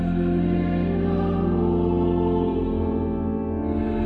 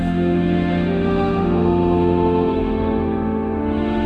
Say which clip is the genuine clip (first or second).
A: first